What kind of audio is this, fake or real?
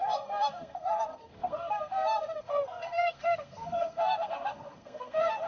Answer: fake